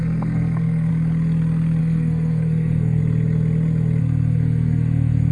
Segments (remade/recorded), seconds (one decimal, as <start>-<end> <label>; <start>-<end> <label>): 0.0-0.9 remade; 0.9-1.8 recorded; 1.8-3.0 remade; 3.0-4.0 recorded; 4.0-5.3 remade